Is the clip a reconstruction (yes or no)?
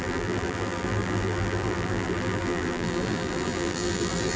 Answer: yes